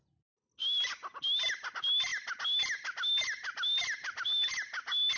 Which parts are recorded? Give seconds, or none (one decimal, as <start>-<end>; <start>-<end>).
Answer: 0.0-5.2